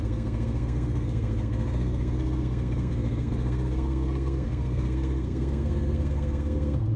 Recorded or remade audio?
remade